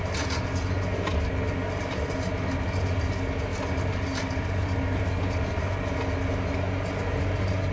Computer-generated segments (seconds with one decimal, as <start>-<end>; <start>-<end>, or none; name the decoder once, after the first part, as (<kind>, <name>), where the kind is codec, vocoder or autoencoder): none

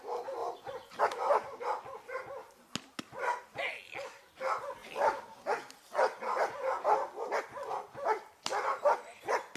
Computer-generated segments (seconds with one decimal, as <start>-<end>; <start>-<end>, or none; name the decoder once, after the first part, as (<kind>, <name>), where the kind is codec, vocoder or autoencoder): none

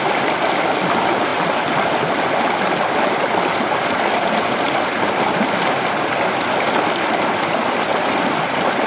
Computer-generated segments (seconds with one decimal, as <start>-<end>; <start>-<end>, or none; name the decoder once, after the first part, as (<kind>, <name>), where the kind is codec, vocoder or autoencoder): none

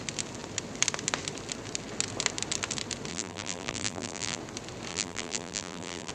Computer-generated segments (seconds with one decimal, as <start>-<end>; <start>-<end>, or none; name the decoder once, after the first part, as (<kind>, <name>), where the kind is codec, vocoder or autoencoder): 3.1-4.4 (vocoder, BigVGAN v2); 4.9-6.1

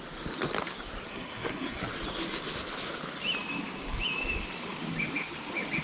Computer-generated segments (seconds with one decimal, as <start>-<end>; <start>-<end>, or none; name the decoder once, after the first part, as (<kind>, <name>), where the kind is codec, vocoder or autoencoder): 1.1-1.8 (codec, SNAC)

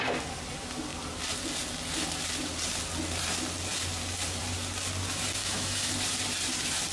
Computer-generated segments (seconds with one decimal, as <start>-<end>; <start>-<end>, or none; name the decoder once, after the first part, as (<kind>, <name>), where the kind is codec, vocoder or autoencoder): 5.4-5.9 (autoencoder, DAC-VAE)

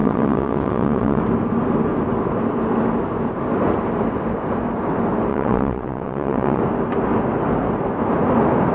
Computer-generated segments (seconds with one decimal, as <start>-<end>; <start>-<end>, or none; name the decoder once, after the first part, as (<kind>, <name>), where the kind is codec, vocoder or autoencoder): 0.0-1.2 (vocoder, WaveNeXt); 5.3-6.6